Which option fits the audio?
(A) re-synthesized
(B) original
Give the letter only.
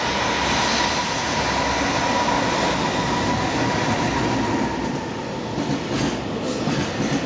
B